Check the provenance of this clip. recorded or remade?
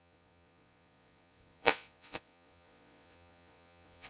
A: remade